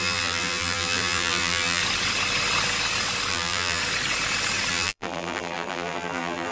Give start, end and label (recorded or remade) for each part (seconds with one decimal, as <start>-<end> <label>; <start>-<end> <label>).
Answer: 0.0-1.8 remade; 1.8-3.3 recorded; 3.3-3.8 remade; 3.8-4.7 recorded; 4.7-6.5 remade